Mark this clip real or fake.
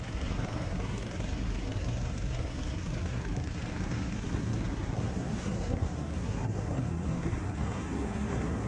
fake